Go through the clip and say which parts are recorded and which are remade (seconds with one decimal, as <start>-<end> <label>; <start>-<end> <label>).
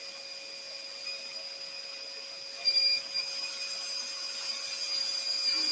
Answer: 0.0-5.7 recorded